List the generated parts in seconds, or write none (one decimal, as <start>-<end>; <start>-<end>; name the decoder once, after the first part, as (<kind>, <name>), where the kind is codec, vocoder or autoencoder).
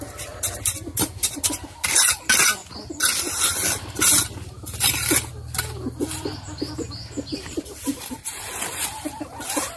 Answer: none